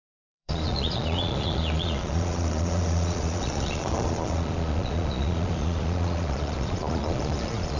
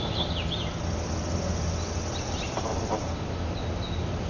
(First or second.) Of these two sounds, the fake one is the first